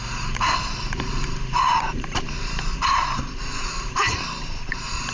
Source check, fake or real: fake